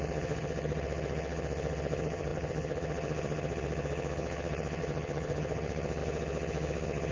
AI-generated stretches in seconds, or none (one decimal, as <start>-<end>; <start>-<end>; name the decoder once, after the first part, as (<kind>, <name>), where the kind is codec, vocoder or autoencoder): 0.0-7.1 (vocoder, HiFi-GAN)